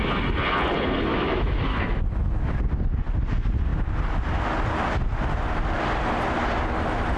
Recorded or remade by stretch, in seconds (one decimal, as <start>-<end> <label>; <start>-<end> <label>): 0.0-1.1 recorded; 1.1-2.0 remade; 2.0-7.2 recorded